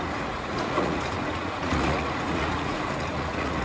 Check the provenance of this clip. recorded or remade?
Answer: remade